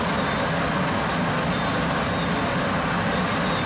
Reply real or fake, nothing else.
real